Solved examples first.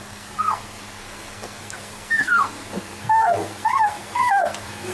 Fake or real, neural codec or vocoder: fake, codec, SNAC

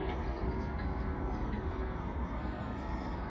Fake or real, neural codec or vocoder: fake, codec, SNAC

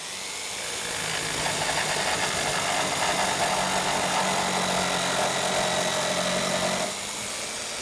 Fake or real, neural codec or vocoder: real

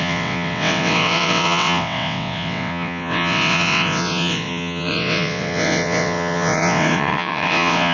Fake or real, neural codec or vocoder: fake, vocoder, WaveNeXt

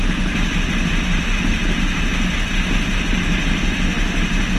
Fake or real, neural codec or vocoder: real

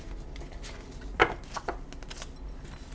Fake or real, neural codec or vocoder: real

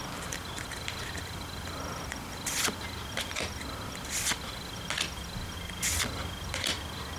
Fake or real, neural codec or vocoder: real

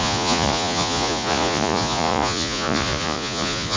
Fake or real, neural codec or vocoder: fake, vocoder, Vocos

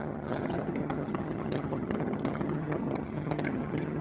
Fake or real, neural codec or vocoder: fake, vocoder, HiFi-GAN